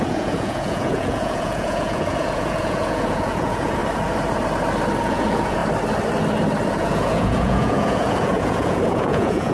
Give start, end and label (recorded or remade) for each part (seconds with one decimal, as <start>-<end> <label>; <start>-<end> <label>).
0.0-3.8 remade; 3.8-5.0 recorded; 5.0-5.6 remade; 5.6-6.7 recorded; 6.7-9.5 remade

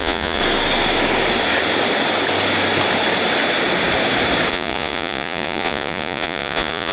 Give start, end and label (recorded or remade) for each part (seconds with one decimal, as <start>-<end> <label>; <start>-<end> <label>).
0.0-0.4 remade; 0.4-4.5 recorded; 4.5-6.9 remade

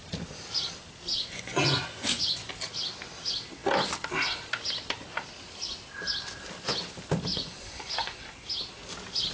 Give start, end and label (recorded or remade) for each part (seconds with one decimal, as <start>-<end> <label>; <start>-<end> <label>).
0.0-1.1 recorded; 1.1-2.5 remade; 2.5-7.3 recorded; 7.3-8.2 remade; 8.2-9.3 recorded

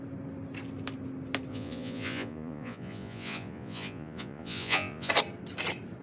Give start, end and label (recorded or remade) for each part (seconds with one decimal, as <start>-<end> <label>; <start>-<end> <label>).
0.0-1.5 recorded; 1.5-5.1 remade; 5.1-6.0 recorded

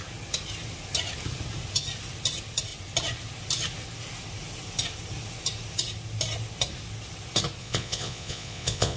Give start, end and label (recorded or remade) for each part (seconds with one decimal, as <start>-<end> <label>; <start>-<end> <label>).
0.0-7.6 recorded; 7.6-9.0 remade

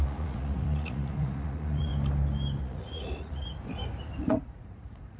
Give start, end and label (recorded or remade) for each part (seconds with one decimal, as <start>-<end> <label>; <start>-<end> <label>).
0.0-1.9 remade; 1.9-2.6 recorded; 2.6-3.4 remade; 3.4-4.2 recorded; 4.2-5.2 remade